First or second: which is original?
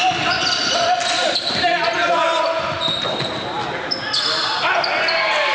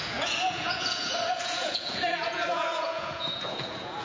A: first